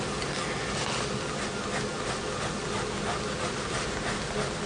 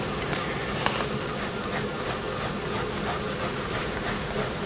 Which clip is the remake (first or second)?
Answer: second